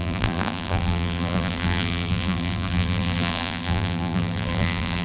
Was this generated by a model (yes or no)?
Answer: yes